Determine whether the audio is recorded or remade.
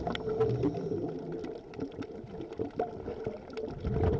recorded